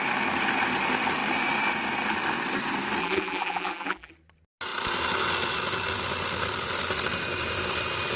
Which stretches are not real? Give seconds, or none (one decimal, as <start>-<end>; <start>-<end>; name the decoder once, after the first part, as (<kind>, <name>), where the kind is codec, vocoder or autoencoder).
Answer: 3.0-4.1 (vocoder, BigVGAN v2)